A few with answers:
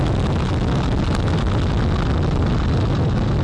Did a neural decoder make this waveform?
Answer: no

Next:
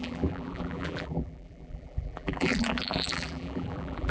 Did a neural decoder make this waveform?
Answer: yes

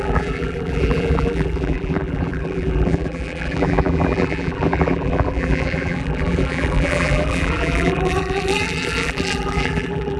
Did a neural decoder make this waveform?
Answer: yes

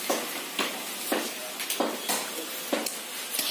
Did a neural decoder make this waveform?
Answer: no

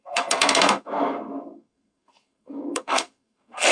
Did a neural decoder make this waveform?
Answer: yes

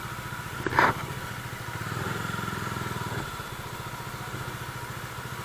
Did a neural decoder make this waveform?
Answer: no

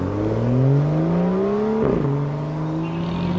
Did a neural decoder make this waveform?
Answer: no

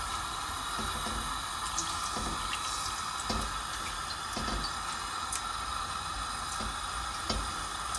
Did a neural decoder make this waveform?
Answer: no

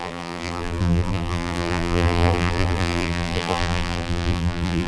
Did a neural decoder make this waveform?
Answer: yes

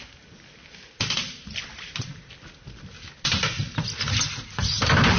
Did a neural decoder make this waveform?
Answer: no